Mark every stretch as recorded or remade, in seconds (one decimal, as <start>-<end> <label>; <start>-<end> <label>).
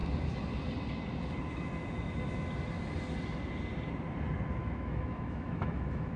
0.0-4.6 recorded; 4.6-6.2 remade